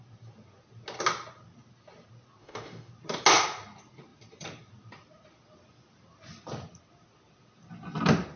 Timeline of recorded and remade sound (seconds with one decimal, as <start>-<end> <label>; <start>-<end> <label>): 0.0-2.4 recorded; 2.4-2.9 remade; 2.9-8.4 recorded